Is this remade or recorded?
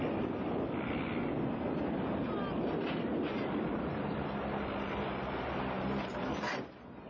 recorded